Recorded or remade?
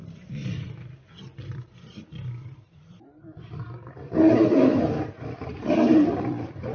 remade